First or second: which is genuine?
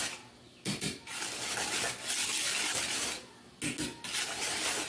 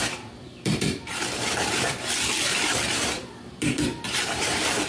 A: first